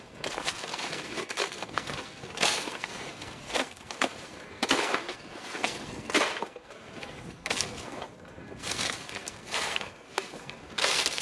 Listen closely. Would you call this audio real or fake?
fake